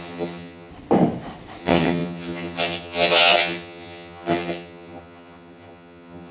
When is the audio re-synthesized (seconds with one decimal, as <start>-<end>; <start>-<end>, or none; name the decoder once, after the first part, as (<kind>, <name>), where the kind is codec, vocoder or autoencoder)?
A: 0.0-0.7 (vocoder, HiFi-GAN); 1.6-6.3